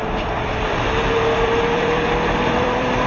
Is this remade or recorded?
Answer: remade